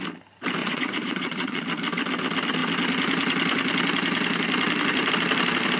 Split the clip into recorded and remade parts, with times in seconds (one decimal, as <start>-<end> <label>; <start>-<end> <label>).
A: 0.0-0.6 recorded; 0.6-1.6 remade; 1.6-5.8 recorded

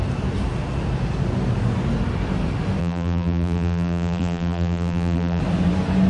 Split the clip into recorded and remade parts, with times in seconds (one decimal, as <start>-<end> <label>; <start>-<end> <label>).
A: 0.0-2.8 recorded; 2.8-5.4 remade; 5.4-6.1 recorded

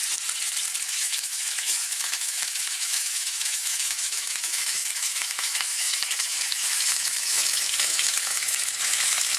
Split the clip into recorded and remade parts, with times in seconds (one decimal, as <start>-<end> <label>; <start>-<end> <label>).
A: 0.0-0.8 recorded; 0.8-9.4 remade

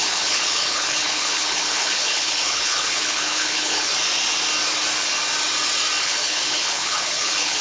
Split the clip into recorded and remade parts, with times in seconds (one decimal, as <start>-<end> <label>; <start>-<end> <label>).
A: 0.0-3.9 remade; 3.9-6.0 recorded; 6.0-7.6 remade

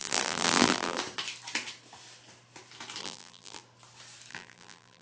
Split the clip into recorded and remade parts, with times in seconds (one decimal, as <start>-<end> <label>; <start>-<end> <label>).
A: 0.0-1.0 remade; 1.0-3.0 recorded; 3.0-3.6 remade; 3.6-4.3 recorded; 4.3-5.0 remade

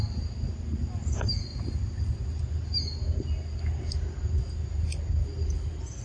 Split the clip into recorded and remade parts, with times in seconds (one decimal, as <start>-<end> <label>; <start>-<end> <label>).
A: 0.0-6.0 recorded

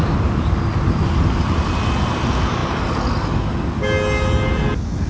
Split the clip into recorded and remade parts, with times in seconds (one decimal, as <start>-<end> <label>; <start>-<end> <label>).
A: 0.0-5.1 recorded